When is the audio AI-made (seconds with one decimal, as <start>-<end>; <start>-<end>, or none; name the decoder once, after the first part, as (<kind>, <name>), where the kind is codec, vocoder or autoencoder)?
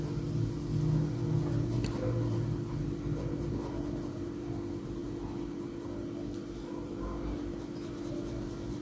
none